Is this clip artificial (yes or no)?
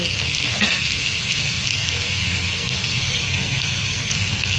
yes